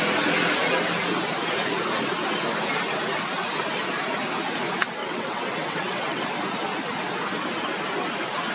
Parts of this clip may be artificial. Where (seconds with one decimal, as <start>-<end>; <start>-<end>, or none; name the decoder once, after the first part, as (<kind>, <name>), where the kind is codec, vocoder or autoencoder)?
5.0-6.2 (vocoder, WaveNeXt)

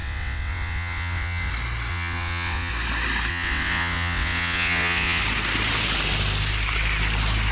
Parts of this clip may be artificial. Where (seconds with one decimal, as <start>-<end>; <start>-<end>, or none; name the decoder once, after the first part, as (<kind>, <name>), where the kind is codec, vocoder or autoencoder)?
0.0-1.5 (vocoder, WaveNeXt); 1.9-2.7; 3.3-5.2

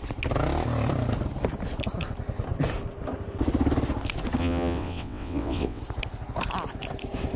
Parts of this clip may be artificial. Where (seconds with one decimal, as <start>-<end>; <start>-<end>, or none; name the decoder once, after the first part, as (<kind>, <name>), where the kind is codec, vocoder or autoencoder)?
4.4-5.8 (vocoder, WaveNeXt)

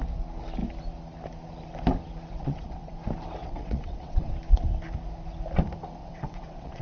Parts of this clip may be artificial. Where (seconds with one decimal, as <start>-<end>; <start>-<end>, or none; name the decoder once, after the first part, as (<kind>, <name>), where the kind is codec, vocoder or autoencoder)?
2.3-3.0 (vocoder, WaveNeXt); 3.4-4.3; 6.0-6.8